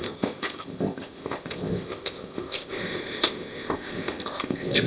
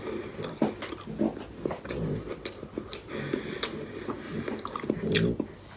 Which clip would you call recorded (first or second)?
second